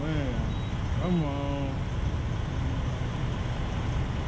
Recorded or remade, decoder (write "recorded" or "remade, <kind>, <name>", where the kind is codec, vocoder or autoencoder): recorded